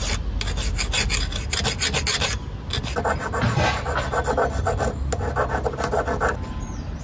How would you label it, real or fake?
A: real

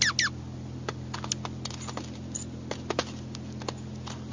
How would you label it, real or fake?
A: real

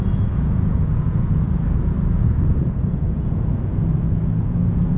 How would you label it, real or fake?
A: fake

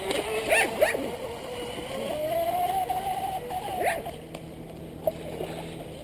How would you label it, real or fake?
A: real